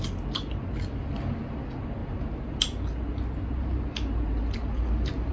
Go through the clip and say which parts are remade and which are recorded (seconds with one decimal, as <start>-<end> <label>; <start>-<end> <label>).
0.0-5.3 recorded